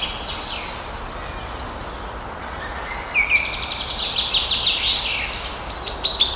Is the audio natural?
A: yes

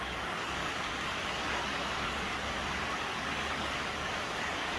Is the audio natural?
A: no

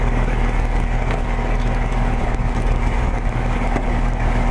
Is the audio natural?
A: no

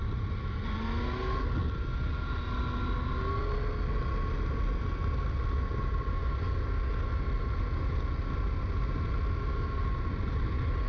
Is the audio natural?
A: yes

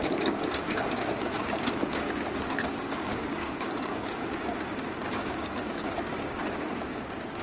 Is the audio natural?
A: no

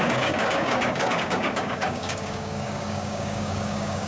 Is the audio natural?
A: no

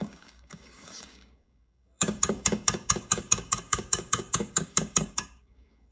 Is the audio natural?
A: no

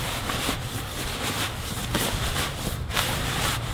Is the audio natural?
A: yes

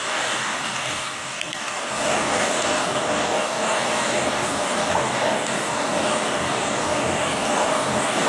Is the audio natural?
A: no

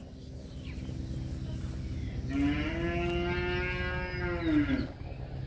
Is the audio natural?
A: yes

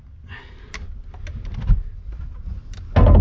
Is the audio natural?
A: yes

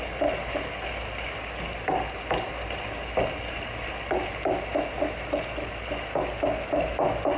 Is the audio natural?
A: yes